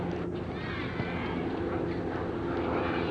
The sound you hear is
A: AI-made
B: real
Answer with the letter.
B